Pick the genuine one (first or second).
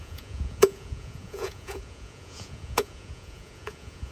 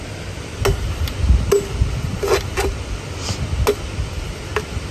second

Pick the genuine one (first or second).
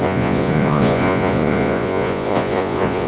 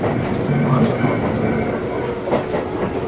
second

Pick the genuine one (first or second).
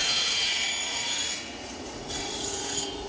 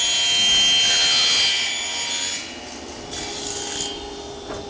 second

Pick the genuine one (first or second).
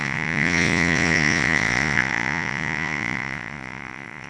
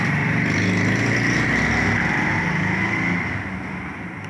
second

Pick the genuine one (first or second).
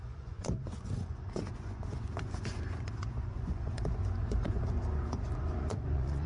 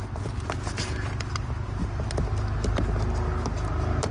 second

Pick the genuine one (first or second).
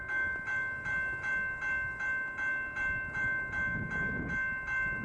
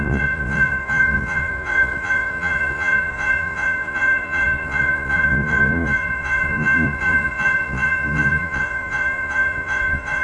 first